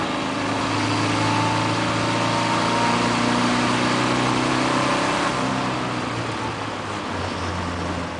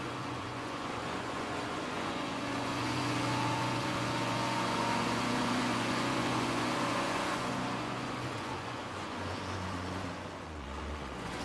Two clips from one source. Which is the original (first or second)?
first